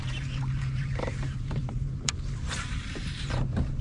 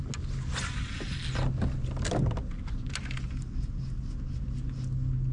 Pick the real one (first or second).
second